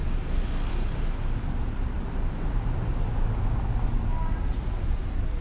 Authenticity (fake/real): real